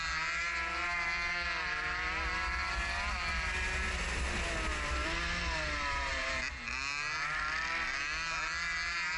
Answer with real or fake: real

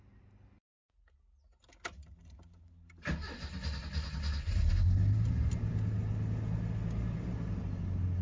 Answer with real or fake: real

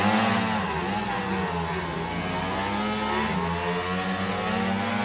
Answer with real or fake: real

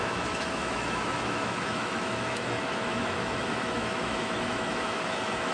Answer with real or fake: fake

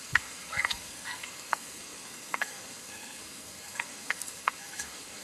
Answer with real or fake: fake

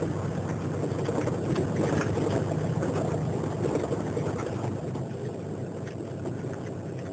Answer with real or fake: real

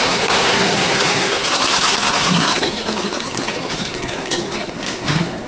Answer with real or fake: fake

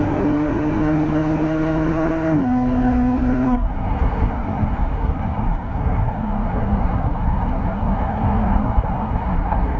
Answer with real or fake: fake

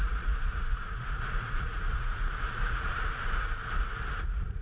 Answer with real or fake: fake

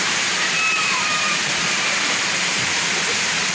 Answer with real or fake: fake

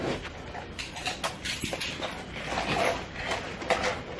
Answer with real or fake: real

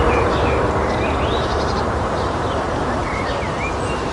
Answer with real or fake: fake